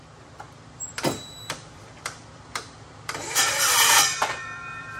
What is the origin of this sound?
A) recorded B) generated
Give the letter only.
B